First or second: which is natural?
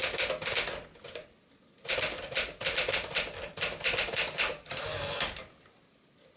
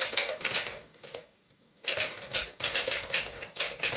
first